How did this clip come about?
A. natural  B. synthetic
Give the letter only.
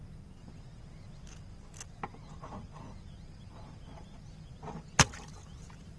A